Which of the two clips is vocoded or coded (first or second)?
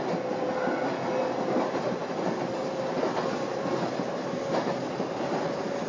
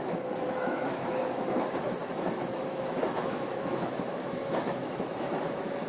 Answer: second